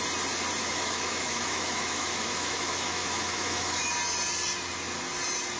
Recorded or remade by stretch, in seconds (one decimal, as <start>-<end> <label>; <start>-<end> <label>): 0.0-0.6 recorded; 0.6-3.9 remade; 3.9-5.6 recorded